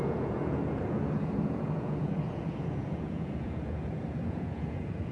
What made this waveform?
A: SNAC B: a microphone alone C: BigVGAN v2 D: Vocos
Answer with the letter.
D